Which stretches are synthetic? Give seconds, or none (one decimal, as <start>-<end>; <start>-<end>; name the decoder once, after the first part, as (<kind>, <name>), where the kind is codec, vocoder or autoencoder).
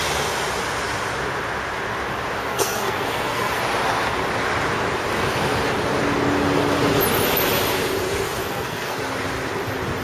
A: 2.4-3.6 (codec, SNAC); 8.4-9.0